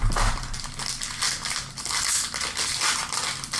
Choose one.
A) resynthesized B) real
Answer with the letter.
B